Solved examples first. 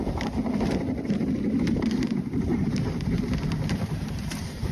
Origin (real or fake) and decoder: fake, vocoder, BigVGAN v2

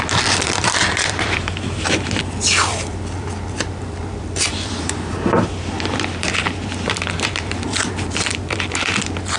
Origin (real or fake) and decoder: fake, vocoder, BigVGAN v2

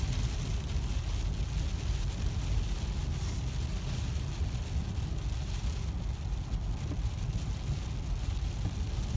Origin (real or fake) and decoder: real